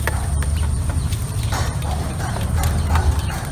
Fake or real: fake